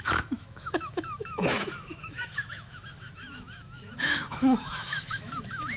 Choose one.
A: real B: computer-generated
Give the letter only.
B